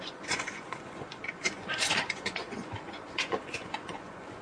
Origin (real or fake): fake